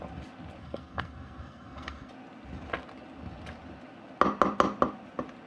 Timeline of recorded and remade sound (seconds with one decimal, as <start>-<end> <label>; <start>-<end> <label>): 0.0-0.6 recorded; 0.6-2.1 remade; 2.1-5.5 recorded